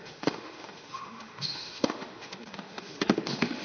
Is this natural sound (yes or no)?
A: no